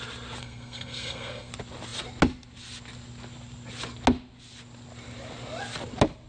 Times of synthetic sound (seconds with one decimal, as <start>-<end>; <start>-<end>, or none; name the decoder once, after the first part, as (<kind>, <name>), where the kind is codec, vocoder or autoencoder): 0.4-1.5 (codec, SNAC)